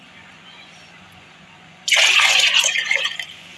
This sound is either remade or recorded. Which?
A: remade